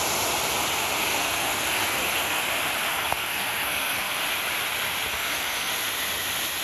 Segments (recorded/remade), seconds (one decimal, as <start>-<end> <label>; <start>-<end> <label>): 0.0-1.1 recorded; 1.1-2.4 remade; 2.4-2.9 recorded; 2.9-4.2 remade; 4.2-5.1 recorded; 5.1-5.7 remade; 5.7-6.6 recorded